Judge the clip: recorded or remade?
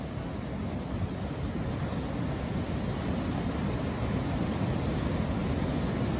recorded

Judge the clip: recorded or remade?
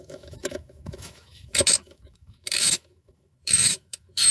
remade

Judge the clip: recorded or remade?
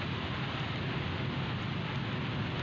recorded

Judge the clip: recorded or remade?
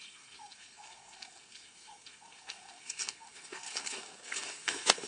remade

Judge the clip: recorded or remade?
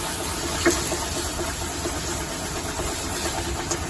recorded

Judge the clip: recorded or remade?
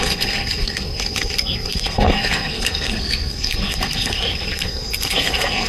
remade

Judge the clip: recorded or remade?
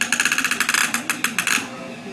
recorded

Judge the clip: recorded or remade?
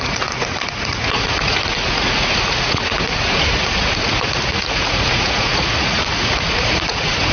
remade